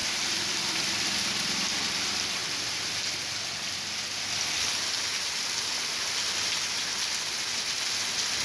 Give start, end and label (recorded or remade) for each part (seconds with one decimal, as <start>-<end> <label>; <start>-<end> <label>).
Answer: 0.0-8.4 recorded